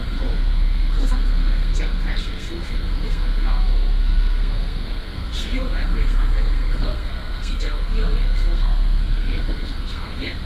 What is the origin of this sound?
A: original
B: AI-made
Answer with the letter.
B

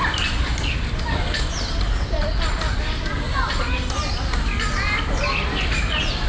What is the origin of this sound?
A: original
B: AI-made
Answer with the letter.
A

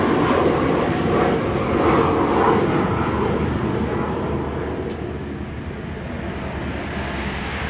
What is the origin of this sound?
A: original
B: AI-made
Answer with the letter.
A